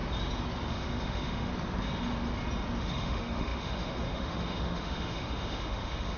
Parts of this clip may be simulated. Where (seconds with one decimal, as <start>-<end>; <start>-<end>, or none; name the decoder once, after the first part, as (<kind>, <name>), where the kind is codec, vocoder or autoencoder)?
0.7-1.5 (autoencoder, DAC-VAE); 2.8-6.2